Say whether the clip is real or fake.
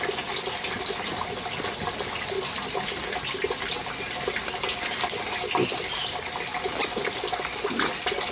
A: real